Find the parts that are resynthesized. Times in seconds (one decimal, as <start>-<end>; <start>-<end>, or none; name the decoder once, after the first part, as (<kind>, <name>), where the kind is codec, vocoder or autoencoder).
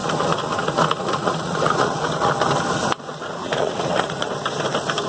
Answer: 0.0-2.3 (vocoder, Vocos); 3.4-4.3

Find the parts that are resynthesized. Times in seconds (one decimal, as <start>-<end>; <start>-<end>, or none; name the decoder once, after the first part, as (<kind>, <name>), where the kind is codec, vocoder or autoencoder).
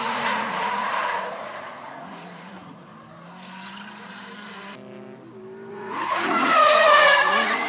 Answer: 0.0-2.9 (vocoder, Vocos); 5.7-7.7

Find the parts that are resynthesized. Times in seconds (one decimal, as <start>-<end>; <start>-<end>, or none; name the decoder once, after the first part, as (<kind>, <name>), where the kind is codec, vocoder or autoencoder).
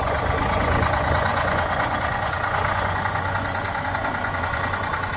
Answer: 0.0-5.2 (vocoder, Vocos)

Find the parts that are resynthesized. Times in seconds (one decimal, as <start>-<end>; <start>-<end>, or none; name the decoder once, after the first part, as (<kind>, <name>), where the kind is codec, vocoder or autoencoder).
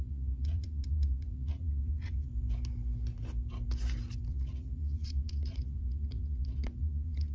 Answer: 0.0-2.3 (vocoder, Vocos); 4.3-7.3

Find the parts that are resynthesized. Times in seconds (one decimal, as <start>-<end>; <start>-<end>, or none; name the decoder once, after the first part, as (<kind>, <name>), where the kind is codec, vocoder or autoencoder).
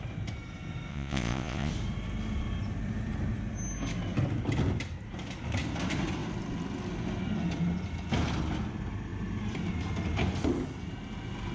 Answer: 0.9-1.7 (vocoder, Vocos)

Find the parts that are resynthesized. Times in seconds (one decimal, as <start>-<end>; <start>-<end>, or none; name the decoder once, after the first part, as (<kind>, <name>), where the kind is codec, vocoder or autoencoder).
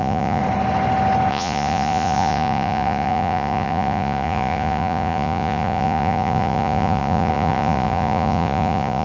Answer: 0.0-0.4 (vocoder, Vocos); 1.3-9.0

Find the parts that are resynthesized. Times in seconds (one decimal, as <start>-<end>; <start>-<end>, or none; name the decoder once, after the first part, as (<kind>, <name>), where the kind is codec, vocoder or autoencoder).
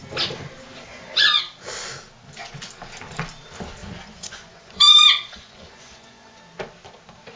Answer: 0.9-1.4 (vocoder, Vocos); 3.8-6.4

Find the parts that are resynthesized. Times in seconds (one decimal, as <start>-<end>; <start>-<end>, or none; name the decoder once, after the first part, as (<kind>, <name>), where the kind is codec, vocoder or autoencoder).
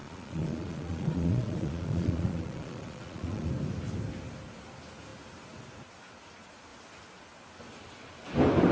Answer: 0.0-3.5 (vocoder, Vocos)